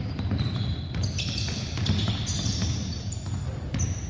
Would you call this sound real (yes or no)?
yes